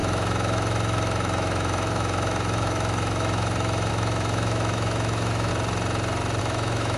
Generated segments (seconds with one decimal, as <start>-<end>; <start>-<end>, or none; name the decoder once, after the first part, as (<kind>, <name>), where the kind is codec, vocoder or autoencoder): 0.0-5.5 (autoencoder, DAC-VAE); 6.4-7.0